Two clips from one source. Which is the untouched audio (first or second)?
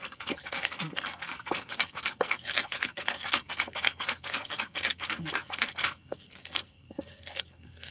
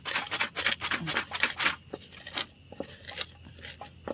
second